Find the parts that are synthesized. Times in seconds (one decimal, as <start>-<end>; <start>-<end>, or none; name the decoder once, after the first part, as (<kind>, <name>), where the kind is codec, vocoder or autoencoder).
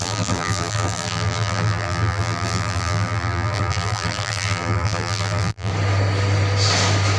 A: 0.0-5.7 (vocoder, BigVGAN v2)